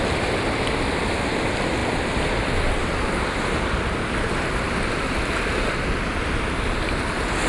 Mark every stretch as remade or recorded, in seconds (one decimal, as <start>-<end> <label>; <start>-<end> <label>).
0.0-1.8 recorded; 1.8-5.9 remade; 5.9-7.5 recorded